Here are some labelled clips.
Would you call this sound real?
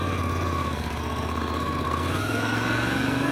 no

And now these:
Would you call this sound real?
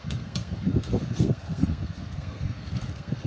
no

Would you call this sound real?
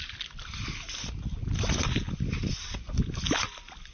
yes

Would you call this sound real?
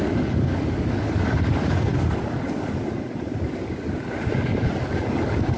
no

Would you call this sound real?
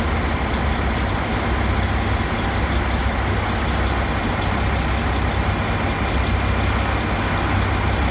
yes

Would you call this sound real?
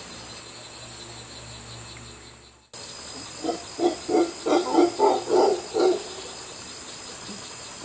yes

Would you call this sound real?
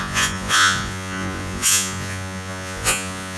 no